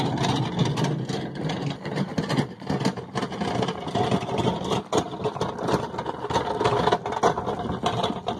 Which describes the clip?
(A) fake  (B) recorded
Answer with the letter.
B